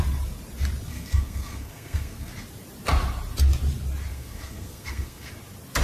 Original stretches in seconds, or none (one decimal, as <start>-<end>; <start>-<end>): 0.0-0.9; 2.3-4.1; 5.3-5.8